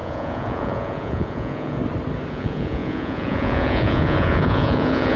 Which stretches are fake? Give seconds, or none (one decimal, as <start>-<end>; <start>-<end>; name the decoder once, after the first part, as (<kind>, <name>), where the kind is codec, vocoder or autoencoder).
0.0-1.8 (vocoder, Vocos); 2.3-5.2